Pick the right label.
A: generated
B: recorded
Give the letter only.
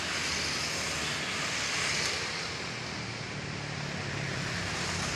B